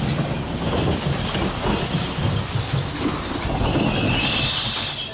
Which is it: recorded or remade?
recorded